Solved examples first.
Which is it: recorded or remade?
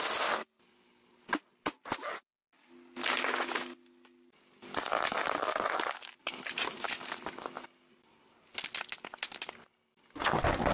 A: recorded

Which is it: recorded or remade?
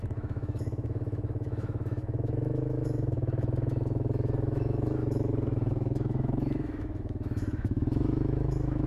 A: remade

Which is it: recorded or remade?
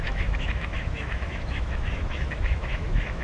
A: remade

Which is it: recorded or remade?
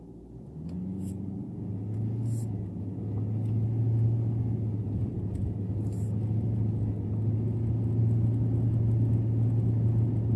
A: recorded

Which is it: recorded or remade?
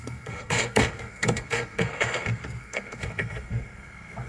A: remade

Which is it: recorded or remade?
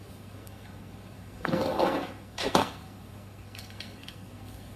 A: remade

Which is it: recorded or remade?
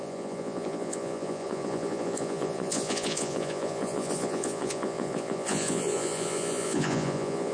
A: remade